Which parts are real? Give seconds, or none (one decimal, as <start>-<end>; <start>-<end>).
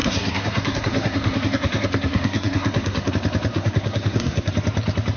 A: 3.1-3.5; 4.5-5.2